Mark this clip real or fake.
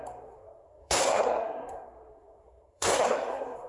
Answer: fake